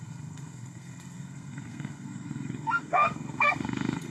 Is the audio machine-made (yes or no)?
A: yes